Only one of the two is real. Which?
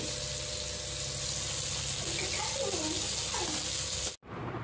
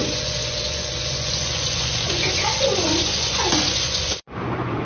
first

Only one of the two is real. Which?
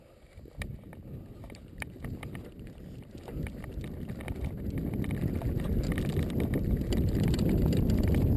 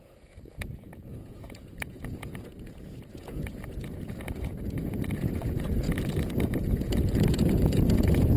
first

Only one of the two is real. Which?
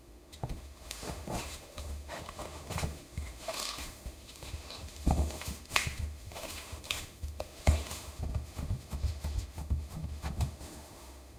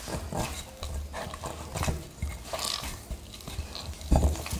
second